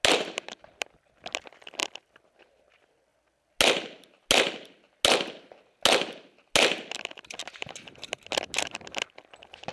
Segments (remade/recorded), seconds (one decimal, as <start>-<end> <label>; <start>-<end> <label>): 0.0-9.7 recorded